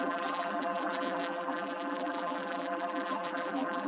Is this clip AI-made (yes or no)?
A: yes